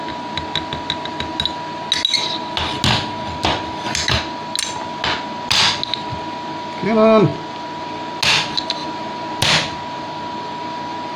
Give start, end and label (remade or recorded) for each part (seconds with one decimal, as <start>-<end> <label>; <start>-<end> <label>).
0.0-11.2 recorded